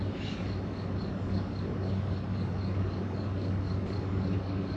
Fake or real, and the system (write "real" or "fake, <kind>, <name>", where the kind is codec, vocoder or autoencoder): fake, codec, DAC